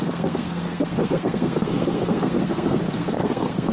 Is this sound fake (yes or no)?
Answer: yes